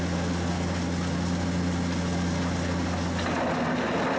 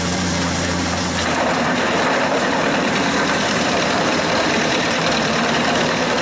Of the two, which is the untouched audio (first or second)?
first